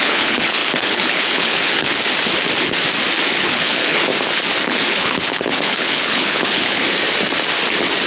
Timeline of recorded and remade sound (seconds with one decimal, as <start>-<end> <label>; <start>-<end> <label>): 0.0-1.9 remade; 1.9-3.3 recorded; 3.3-4.1 remade; 4.1-4.7 recorded; 4.7-6.8 remade; 6.8-8.1 recorded